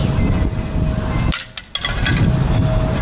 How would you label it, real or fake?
real